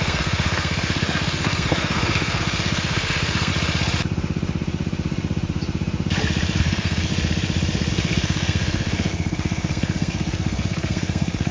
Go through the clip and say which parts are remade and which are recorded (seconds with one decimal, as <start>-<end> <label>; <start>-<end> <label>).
0.0-3.5 remade; 3.5-6.6 recorded; 6.6-7.1 remade; 7.1-7.9 recorded; 7.9-11.5 remade